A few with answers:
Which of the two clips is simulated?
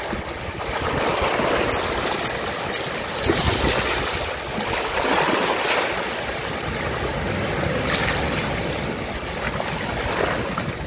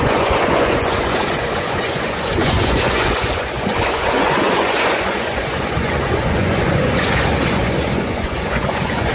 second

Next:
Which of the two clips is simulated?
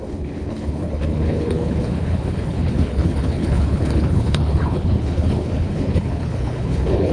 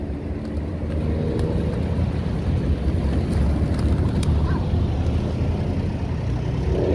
first